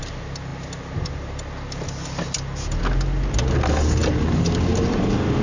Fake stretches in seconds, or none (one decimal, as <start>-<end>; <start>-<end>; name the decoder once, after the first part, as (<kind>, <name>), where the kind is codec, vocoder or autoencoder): none